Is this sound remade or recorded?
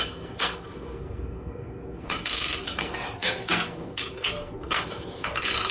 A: remade